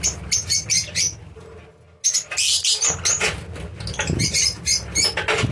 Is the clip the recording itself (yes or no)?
yes